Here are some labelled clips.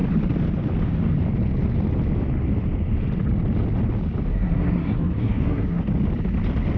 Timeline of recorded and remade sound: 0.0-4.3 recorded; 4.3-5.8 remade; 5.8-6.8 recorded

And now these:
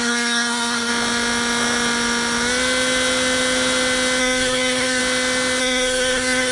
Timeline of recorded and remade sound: 0.0-0.9 remade; 0.9-4.2 recorded; 4.2-5.0 remade; 5.0-5.6 recorded; 5.6-6.5 remade

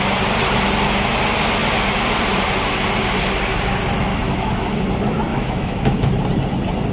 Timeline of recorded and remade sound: 0.0-4.1 recorded; 4.1-4.8 remade; 4.8-5.3 recorded; 5.3-6.1 remade; 6.1-6.9 recorded

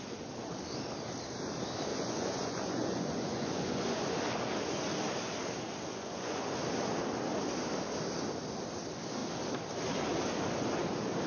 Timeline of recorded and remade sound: 0.0-1.9 recorded; 1.9-4.2 remade; 4.2-5.9 recorded; 5.9-6.5 remade; 6.5-11.3 recorded

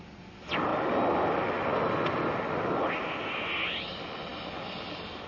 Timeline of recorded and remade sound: 0.0-5.3 recorded